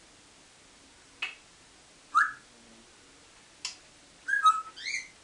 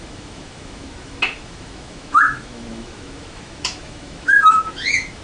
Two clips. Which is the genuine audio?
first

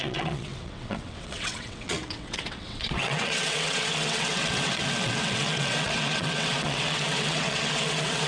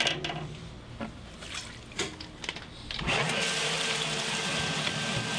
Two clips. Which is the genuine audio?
second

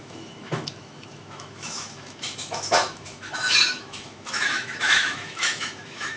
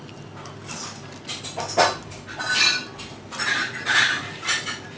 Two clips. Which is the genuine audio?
second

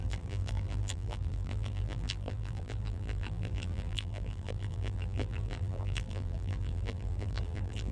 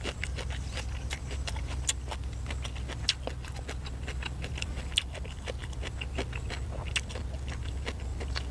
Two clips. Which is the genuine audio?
second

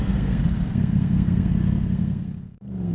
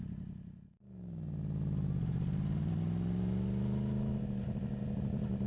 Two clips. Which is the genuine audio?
second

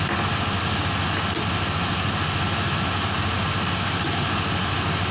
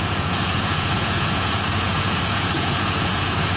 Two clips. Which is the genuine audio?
first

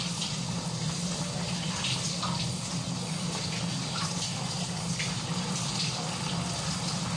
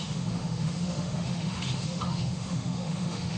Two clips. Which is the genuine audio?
first